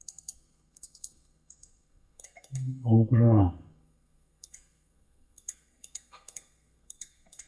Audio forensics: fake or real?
fake